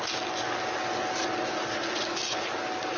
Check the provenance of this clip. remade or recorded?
recorded